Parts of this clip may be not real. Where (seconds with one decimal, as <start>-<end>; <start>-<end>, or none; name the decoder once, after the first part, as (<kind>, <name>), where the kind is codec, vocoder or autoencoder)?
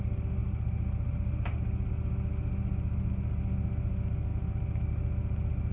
none